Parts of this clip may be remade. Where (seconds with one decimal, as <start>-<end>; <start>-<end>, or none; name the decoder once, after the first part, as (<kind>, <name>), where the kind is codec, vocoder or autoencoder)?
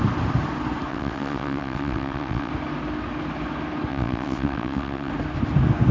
0.9-2.5 (vocoder, WaveNeXt); 3.9-5.1